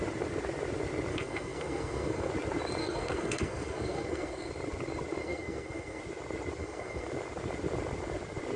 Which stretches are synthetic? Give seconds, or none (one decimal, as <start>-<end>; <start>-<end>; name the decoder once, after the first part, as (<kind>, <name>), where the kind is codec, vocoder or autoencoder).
1.1-2.3 (codec, SNAC); 2.8-4.5; 5.2-6.0; 6.6-7.1